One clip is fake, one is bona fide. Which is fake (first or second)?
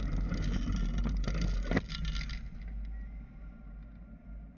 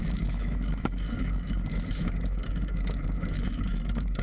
second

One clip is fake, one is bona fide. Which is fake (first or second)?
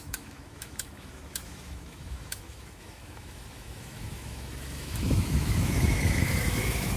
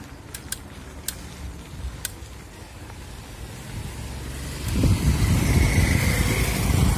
first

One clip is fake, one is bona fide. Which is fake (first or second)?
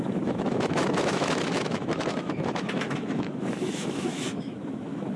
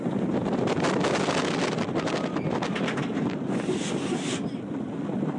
first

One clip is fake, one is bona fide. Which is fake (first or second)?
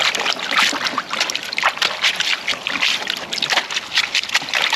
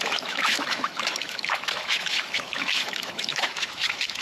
second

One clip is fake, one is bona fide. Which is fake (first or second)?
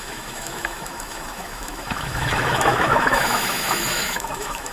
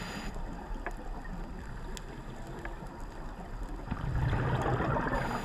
first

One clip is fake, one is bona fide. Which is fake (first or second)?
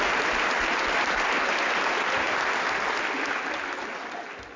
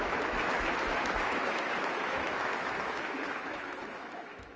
second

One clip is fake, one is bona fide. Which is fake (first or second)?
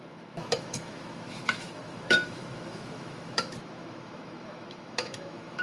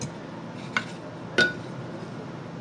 first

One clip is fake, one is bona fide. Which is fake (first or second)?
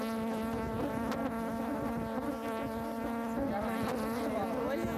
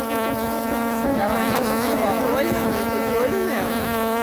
second